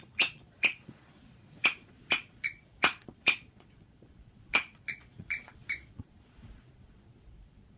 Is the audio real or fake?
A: fake